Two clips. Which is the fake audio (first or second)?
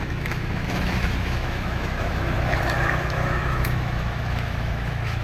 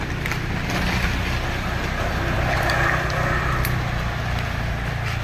first